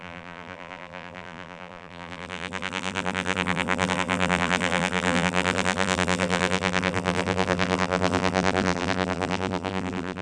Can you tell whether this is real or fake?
fake